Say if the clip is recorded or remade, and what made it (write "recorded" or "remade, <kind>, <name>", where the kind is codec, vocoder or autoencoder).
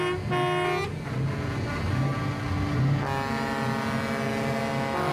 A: recorded